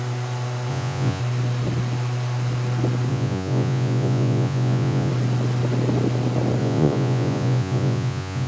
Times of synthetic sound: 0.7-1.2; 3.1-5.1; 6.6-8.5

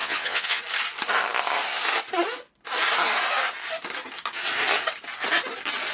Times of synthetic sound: 0.0-0.6

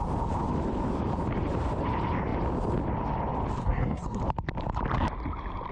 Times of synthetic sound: 3.6-4.2

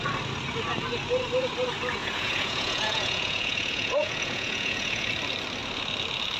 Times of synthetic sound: 2.0-5.1

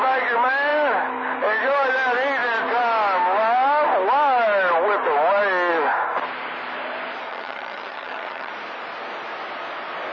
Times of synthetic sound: 7.3-8.5

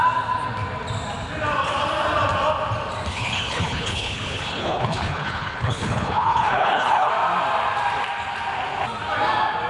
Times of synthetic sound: 3.1-7.1

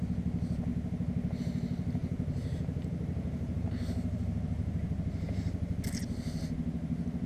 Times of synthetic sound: 2.0-5.8